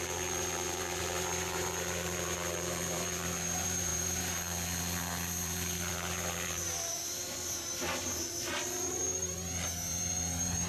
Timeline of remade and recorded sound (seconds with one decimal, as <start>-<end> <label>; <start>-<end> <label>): 0.0-10.7 remade